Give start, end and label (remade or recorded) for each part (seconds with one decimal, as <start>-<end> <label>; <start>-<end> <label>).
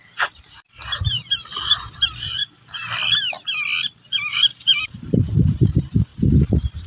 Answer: 0.0-2.4 remade; 2.4-4.2 recorded; 4.2-6.1 remade; 6.1-6.9 recorded